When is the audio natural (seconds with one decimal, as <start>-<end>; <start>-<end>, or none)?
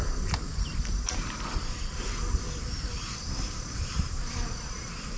0.0-2.9; 4.2-5.2